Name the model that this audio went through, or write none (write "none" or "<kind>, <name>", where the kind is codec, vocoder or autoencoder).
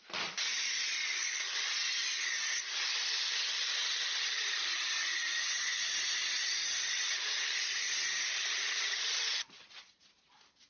none